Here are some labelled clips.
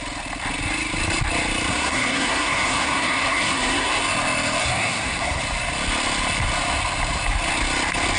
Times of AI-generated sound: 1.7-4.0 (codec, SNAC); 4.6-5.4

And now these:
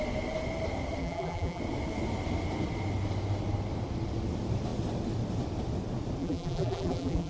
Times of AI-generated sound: 1.0-1.6 (vocoder, BigVGAN v2); 6.2-7.3

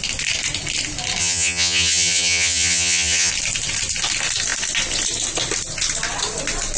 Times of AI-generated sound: 1.2-3.3 (vocoder, HiFi-GAN)

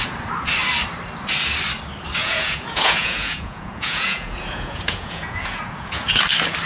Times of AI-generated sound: 2.2-6.2 (vocoder, Vocos)

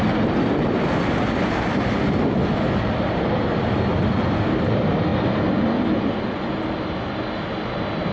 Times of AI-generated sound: none

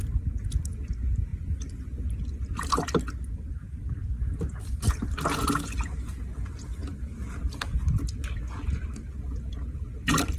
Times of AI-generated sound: none